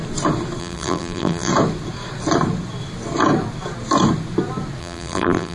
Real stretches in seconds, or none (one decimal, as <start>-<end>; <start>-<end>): 0.0-0.6; 1.5-4.8